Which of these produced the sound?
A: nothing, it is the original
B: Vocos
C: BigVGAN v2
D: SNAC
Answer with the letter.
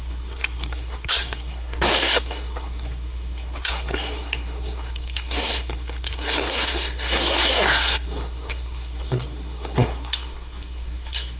D